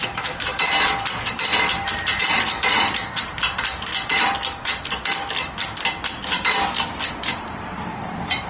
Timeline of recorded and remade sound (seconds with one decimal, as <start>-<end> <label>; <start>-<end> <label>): 0.0-0.5 remade; 0.5-1.9 recorded; 1.9-3.9 remade; 3.9-7.1 recorded; 7.1-8.5 remade